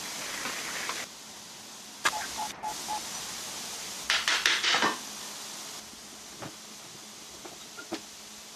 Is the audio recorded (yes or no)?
yes